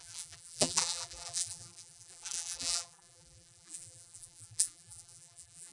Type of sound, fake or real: fake